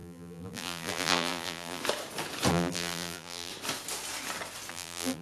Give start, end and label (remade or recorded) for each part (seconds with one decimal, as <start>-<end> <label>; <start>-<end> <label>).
0.0-1.8 remade; 1.8-2.5 recorded; 2.5-3.5 remade; 3.5-4.7 recorded; 4.7-5.2 remade

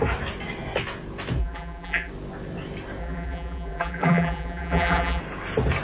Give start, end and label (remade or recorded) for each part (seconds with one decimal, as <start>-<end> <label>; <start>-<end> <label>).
0.0-1.4 recorded; 1.4-2.1 remade; 2.1-3.0 recorded; 3.0-5.2 remade; 5.2-5.8 recorded

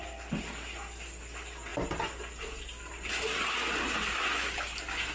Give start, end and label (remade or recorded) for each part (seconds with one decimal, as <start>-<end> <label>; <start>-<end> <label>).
0.0-5.1 recorded

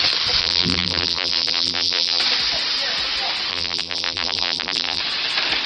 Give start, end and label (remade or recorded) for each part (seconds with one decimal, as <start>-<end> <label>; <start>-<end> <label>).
0.0-0.4 recorded; 0.4-2.2 remade; 2.2-3.5 recorded; 3.5-5.0 remade; 5.0-5.7 recorded

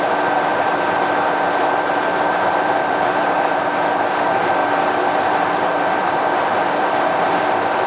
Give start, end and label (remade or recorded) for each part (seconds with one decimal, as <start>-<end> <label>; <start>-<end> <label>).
0.0-0.5 recorded; 0.5-3.6 remade; 3.6-4.6 recorded; 4.6-7.5 remade; 7.5-7.9 recorded